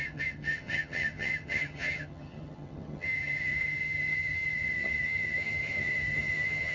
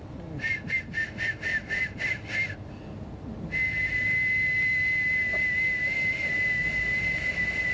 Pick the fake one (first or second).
first